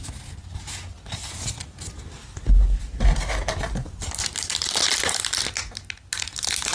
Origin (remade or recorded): recorded